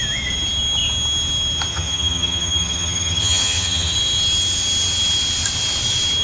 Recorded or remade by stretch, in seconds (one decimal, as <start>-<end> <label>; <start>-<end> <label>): 0.0-1.7 recorded; 1.7-3.9 remade; 3.9-6.2 recorded